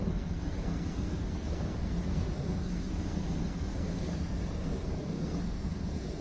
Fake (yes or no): yes